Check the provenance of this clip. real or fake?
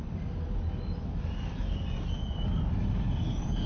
real